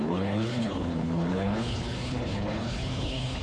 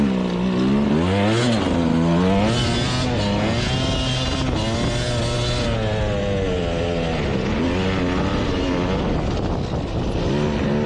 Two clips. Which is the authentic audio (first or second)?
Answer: second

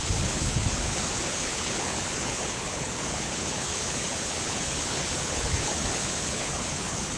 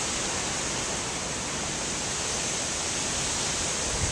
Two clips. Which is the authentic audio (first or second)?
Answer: second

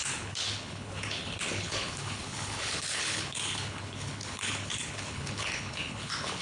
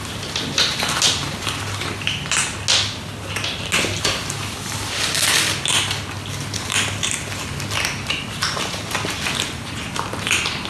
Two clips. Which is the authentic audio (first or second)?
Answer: second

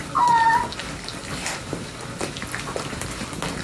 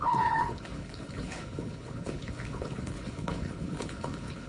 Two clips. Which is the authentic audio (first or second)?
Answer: first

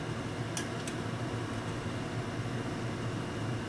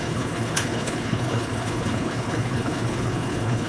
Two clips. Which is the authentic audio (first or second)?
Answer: first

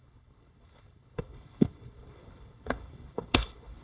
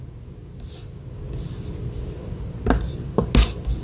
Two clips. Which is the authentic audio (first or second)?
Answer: second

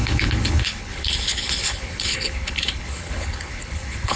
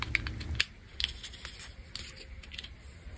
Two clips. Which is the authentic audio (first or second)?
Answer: second